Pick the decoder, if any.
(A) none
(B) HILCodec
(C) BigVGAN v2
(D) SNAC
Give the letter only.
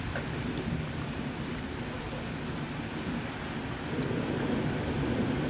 A